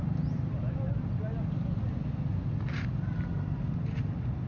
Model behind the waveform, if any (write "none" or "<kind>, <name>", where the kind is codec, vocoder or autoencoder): none